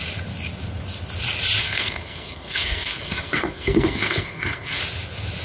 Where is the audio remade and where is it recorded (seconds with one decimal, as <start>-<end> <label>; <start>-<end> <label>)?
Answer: 0.0-1.6 recorded; 1.6-4.8 remade; 4.8-5.4 recorded